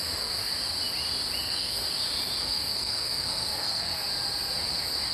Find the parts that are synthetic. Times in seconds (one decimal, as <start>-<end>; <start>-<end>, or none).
0.0-0.4; 1.4-1.8; 2.4-4.0